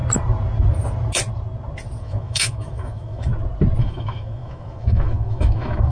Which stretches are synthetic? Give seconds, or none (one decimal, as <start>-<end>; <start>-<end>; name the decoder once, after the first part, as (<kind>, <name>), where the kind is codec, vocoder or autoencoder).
2.0-3.3 (autoencoder, DAC-VAE); 3.8-5.9